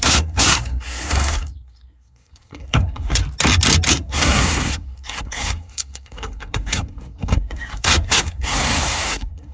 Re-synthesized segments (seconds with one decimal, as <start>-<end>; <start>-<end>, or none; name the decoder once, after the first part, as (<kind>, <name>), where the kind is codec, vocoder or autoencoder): 0.0-3.2 (codec, SNAC); 3.9-9.5